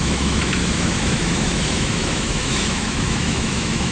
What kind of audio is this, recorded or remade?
remade